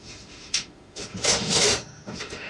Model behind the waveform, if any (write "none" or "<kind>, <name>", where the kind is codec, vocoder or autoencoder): autoencoder, DAC-VAE